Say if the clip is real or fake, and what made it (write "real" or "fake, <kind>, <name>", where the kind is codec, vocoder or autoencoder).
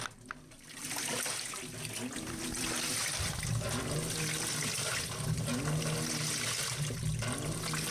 real